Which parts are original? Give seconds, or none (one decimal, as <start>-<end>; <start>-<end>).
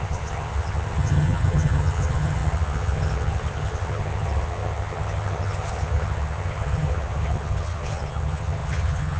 none